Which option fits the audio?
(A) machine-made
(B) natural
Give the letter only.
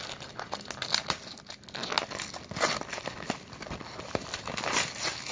B